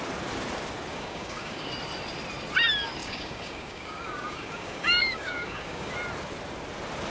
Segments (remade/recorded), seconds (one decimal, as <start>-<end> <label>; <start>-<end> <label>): 0.0-0.9 recorded; 0.9-1.7 remade; 1.7-3.0 recorded; 3.0-5.9 remade; 5.9-7.1 recorded